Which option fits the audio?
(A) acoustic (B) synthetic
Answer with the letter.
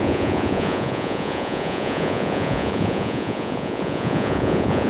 B